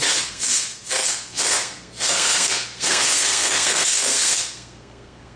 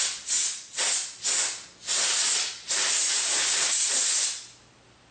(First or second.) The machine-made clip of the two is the first